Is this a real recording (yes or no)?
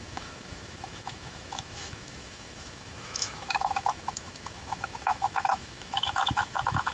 no